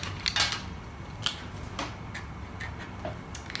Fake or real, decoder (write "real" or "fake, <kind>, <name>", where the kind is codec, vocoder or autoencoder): real